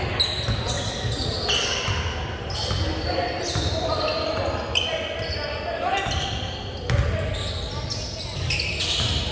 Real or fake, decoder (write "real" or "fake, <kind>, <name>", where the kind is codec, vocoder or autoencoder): real